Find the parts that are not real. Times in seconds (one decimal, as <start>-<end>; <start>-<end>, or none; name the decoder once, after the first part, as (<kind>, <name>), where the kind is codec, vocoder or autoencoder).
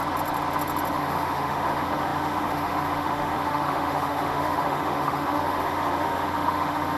0.9-7.0 (autoencoder, DAC-VAE)